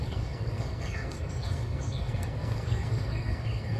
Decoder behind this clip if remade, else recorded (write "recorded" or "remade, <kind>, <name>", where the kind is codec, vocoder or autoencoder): remade, codec, SNAC